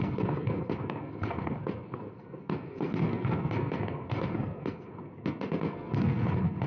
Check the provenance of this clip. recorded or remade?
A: remade